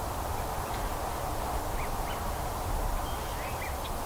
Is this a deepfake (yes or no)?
no